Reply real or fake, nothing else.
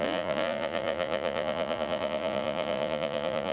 fake